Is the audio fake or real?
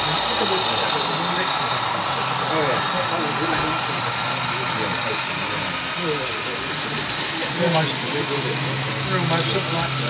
real